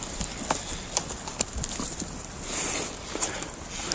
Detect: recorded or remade recorded